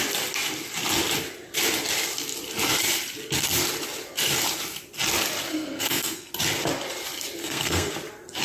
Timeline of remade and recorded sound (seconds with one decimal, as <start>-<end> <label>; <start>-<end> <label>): 0.0-5.5 recorded; 5.5-6.3 remade; 6.3-7.4 recorded; 7.4-7.9 remade; 7.9-8.4 recorded